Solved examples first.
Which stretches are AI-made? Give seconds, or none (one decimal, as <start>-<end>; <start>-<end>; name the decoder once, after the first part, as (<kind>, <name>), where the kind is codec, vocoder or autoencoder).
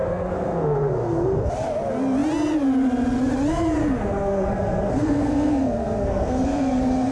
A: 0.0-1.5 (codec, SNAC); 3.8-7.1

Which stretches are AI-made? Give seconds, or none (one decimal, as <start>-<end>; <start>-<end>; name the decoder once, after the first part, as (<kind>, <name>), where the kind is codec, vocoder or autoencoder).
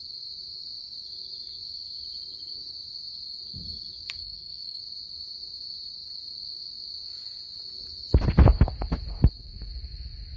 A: 4.2-4.8 (codec, SNAC)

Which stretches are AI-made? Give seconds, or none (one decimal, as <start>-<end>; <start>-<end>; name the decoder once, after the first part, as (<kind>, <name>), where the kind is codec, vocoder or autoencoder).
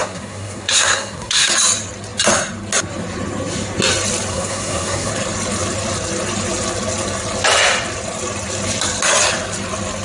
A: 0.0-1.5 (codec, SNAC); 4.3-5.1